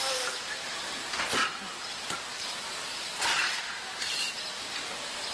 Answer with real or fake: real